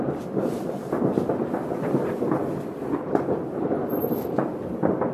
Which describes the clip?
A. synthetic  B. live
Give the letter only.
A